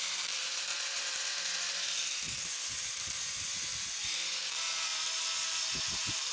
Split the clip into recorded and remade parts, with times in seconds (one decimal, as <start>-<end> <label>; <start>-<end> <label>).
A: 0.0-0.7 remade; 0.7-4.5 recorded; 4.5-4.9 remade; 4.9-5.8 recorded; 5.8-6.3 remade